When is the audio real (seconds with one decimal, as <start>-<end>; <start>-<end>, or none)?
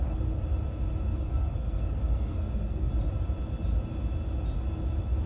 0.0-1.1; 2.9-5.3